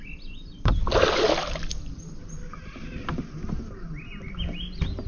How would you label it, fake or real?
real